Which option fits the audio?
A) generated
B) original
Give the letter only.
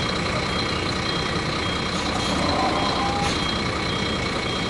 B